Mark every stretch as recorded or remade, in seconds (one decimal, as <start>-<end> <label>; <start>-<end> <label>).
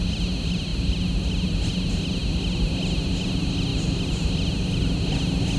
0.0-5.6 recorded